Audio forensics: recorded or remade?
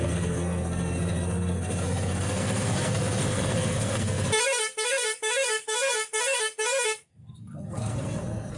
remade